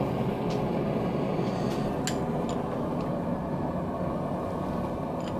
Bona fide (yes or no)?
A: yes